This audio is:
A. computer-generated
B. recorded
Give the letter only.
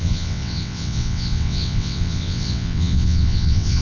A